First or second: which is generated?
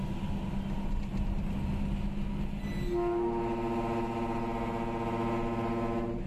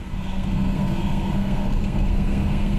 second